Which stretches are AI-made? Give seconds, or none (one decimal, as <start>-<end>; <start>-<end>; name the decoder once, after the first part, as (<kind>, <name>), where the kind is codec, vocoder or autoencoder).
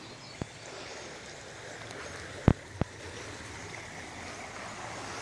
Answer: none